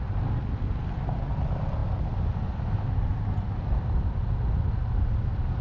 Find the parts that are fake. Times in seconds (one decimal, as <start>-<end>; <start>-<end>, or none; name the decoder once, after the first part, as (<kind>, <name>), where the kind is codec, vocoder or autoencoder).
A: none